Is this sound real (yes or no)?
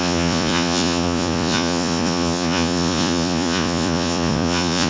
no